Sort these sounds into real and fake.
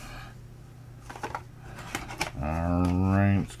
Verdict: real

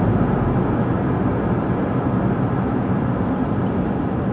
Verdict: real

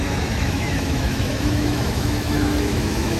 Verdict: fake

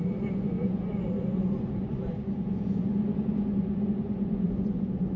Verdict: fake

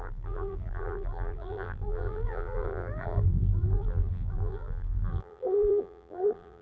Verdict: fake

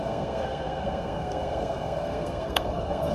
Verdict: fake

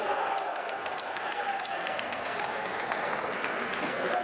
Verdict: fake